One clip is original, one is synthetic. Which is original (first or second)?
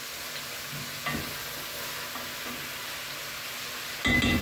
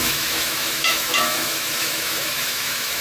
first